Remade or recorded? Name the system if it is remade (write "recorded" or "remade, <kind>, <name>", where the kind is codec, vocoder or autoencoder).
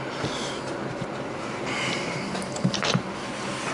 remade, vocoder, BigVGAN v2